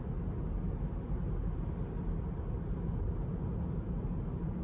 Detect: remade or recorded recorded